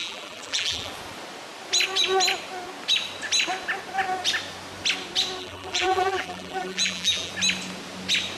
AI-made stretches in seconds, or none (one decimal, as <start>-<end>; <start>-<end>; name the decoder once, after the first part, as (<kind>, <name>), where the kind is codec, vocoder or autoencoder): 0.0-0.9 (vocoder, BigVGAN v2); 5.4-7.3